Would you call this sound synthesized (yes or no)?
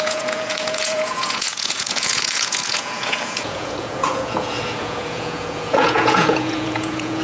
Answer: yes